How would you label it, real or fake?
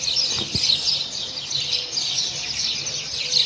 real